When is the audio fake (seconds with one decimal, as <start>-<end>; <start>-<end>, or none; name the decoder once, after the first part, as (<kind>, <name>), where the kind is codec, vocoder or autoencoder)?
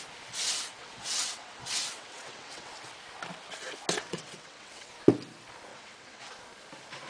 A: 0.8-2.7 (vocoder, WaveNeXt); 4.0-4.9; 5.7-6.3